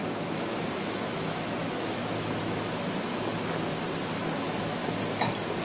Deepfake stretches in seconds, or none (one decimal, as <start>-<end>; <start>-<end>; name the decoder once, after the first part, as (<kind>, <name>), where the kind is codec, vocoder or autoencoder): 0.0-3.3 (autoencoder, DAC-VAE); 4.2-4.8